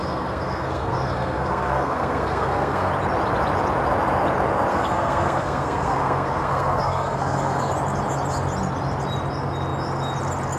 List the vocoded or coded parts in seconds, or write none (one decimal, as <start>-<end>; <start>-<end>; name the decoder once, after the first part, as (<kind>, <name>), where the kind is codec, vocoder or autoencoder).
0.0-2.9 (codec, SNAC); 4.7-7.7